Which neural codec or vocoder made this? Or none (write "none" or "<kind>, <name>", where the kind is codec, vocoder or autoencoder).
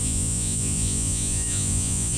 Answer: vocoder, Vocos